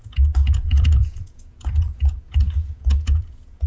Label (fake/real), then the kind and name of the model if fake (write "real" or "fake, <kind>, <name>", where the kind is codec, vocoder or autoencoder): fake, vocoder, Vocos